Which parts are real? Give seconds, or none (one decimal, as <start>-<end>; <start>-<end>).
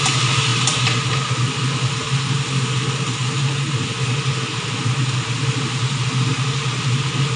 0.0-7.4